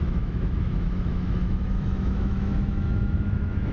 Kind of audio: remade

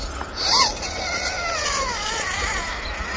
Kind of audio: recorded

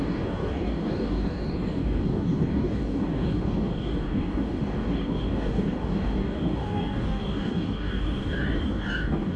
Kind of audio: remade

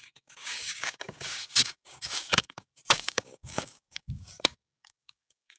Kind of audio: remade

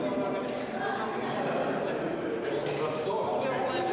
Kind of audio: recorded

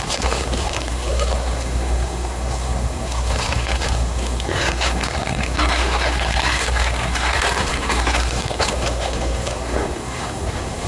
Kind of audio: remade